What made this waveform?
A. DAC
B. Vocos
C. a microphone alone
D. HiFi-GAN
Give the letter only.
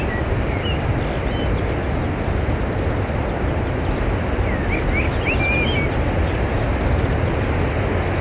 C